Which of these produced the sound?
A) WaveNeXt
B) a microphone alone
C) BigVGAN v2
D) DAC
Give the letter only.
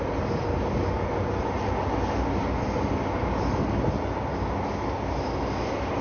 B